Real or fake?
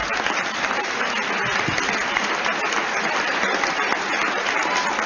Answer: real